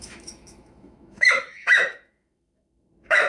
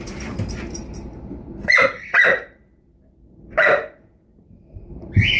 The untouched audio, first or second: second